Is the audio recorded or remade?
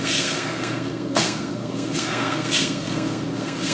remade